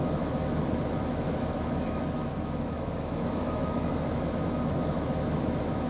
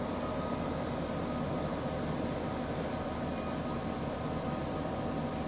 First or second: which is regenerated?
first